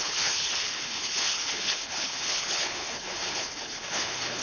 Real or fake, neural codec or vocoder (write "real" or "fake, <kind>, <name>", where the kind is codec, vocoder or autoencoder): fake, codec, HILCodec